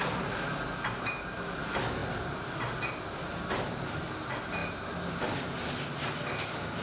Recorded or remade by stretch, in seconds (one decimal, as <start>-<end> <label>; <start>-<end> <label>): 0.0-2.0 recorded; 2.0-4.0 remade; 4.0-4.6 recorded; 4.6-5.2 remade; 5.2-6.8 recorded